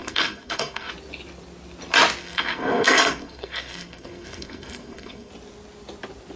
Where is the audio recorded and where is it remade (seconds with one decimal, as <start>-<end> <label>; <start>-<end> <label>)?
0.0-0.9 remade; 0.9-2.2 recorded; 2.2-5.3 remade; 5.3-6.4 recorded